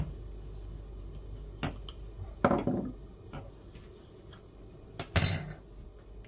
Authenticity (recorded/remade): recorded